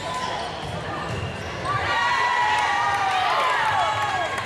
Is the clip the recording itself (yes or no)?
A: yes